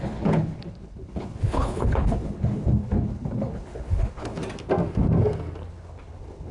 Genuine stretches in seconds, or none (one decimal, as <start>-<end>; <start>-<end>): 4.4-5.7